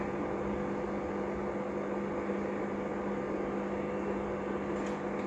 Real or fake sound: real